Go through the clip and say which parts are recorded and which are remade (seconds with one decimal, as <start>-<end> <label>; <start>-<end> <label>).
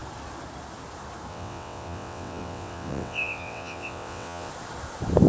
0.0-1.3 recorded; 1.3-4.5 remade; 4.5-5.3 recorded